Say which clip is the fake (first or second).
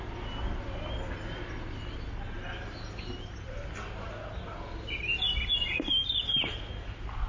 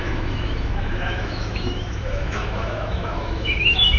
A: second